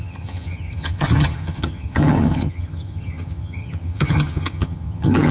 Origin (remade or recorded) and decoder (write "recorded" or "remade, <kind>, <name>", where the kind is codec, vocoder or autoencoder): remade, vocoder, HiFi-GAN